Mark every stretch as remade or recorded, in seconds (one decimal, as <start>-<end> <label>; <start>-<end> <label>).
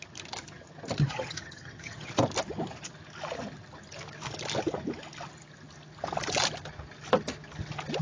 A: 0.0-1.0 recorded; 1.0-2.1 remade; 2.1-8.0 recorded